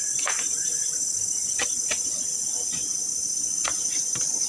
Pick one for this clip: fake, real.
real